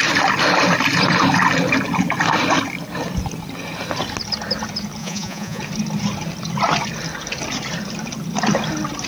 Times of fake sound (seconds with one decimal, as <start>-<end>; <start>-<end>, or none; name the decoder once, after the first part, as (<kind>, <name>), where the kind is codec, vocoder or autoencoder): 5.0-5.6 (vocoder, Vocos)